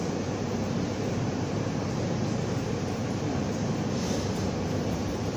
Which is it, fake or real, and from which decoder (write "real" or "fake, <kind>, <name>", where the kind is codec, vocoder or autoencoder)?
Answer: fake, vocoder, BigVGAN v2